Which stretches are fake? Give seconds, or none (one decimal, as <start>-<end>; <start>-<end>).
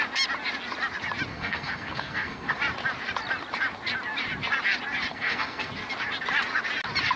1.3-2.5; 5.1-5.7